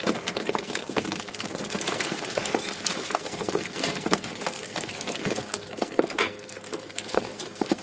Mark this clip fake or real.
fake